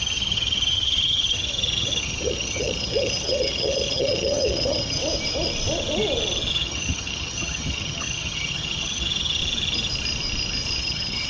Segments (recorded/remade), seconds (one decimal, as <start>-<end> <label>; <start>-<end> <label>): 0.0-5.0 remade; 5.0-6.5 recorded; 6.5-9.4 remade; 9.4-10.8 recorded; 10.8-11.3 remade